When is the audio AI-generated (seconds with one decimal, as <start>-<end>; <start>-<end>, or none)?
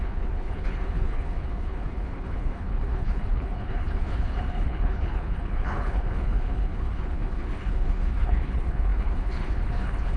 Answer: 0.0-10.2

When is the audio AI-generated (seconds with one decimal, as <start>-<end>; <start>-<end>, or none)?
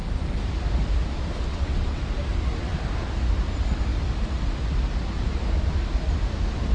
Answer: 1.5-2.0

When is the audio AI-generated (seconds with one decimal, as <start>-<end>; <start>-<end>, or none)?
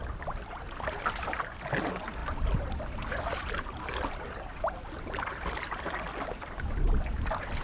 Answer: none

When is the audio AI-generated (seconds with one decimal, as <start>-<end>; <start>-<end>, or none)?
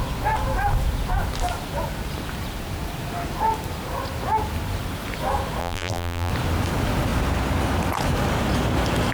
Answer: 5.6-6.3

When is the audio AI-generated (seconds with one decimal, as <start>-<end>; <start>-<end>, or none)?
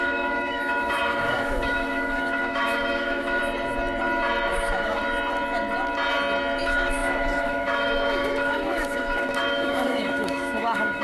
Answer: 0.0-3.4; 4.5-5.0; 6.6-11.0